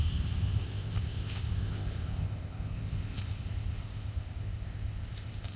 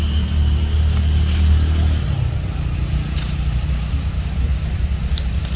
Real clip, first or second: second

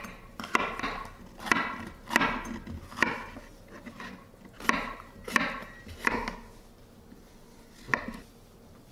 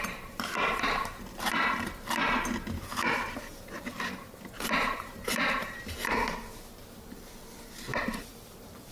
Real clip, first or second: first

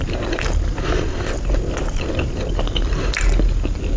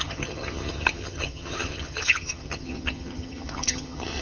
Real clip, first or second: first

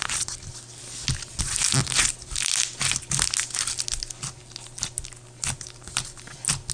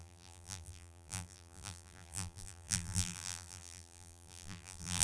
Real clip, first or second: first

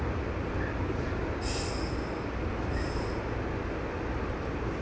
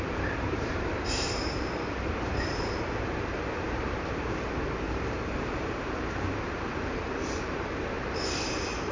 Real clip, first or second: first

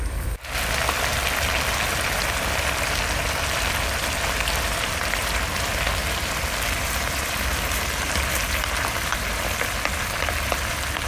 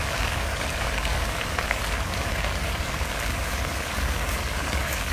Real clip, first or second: first